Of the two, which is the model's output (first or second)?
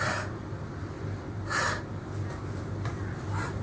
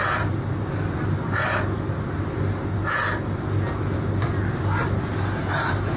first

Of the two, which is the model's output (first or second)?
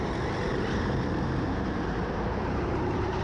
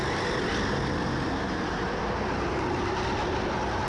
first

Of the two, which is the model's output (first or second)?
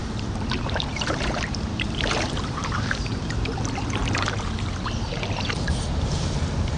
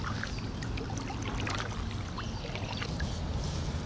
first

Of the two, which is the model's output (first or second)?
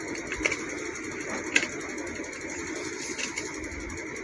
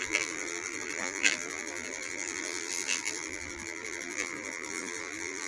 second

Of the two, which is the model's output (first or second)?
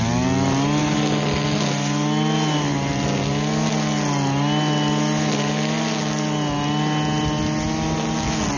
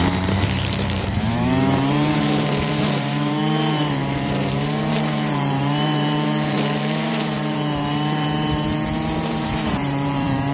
second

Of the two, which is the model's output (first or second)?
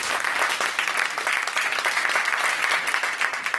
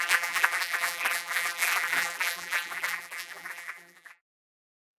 second